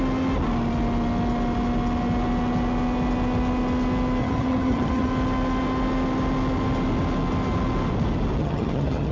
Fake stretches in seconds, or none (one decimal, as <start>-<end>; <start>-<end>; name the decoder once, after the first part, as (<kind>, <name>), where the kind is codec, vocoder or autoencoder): 4.2-5.1 (vocoder, HiFi-GAN); 8.4-9.1